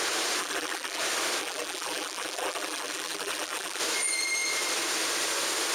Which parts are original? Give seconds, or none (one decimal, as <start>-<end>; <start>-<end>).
0.0-0.4; 1.0-1.4; 3.8-5.7